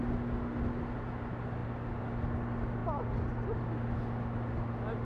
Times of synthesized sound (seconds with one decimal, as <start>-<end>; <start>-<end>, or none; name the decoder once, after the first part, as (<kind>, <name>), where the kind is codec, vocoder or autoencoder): none